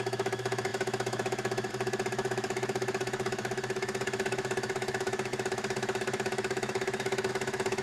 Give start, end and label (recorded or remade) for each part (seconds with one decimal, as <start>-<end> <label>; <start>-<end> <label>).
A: 0.0-7.8 remade